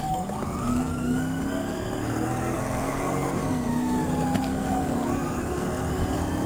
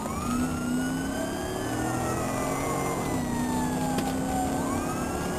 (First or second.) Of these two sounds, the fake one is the first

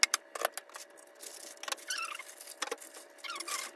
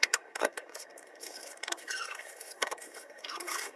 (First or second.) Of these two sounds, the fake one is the second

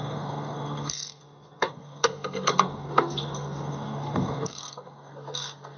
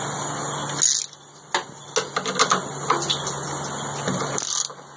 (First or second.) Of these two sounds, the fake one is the first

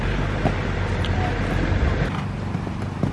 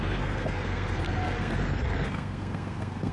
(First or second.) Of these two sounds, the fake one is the second